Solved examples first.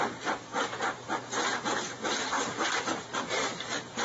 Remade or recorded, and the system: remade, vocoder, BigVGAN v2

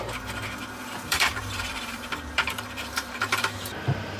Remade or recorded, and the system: remade, vocoder, BigVGAN v2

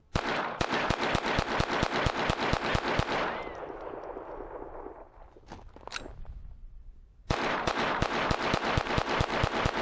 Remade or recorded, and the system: recorded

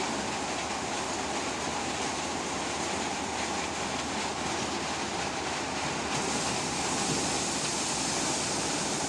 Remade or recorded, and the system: recorded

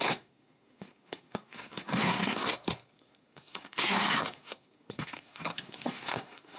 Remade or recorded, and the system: remade, codec, SNAC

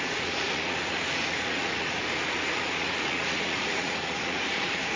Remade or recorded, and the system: remade, vocoder, Vocos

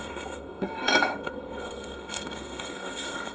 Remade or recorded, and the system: remade, codec, SNAC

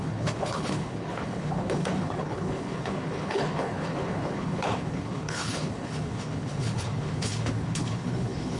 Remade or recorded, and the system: remade, codec, HILCodec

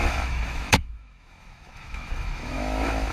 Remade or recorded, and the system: remade, autoencoder, DAC-VAE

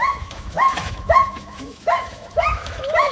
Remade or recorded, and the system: remade, autoencoder, DAC-VAE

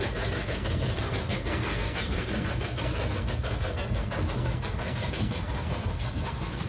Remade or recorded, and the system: remade, codec, SNAC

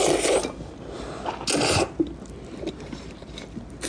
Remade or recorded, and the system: recorded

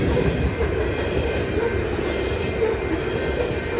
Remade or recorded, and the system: recorded